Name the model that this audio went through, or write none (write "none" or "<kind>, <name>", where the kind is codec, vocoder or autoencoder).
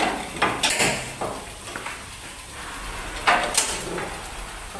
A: none